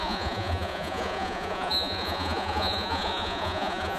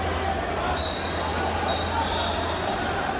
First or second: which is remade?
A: first